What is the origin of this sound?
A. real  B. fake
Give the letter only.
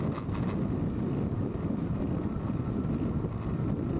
A